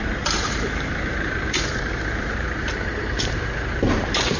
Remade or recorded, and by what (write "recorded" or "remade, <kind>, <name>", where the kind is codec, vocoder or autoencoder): remade, vocoder, BigVGAN v2